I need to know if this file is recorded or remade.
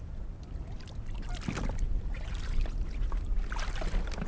recorded